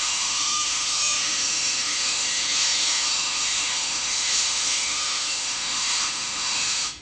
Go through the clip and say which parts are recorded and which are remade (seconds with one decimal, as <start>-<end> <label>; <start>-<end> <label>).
0.0-7.0 remade